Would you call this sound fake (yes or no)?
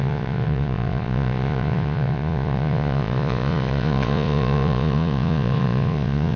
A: yes